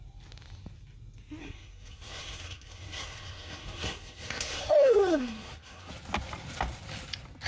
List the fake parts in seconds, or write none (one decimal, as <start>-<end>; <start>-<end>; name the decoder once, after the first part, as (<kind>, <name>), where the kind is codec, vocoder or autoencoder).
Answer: 1.4-5.9 (codec, SNAC)